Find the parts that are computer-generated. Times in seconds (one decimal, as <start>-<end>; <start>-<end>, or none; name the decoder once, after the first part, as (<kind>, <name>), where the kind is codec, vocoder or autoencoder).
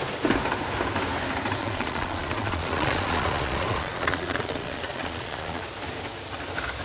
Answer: 1.6-5.7 (vocoder, Vocos)